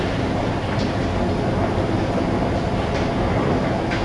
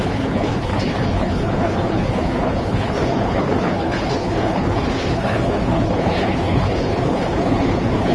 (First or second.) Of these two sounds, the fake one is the second